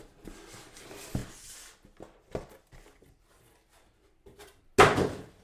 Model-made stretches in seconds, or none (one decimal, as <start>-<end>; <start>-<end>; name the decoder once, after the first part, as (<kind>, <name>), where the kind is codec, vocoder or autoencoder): none